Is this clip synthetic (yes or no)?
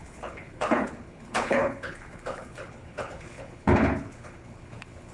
yes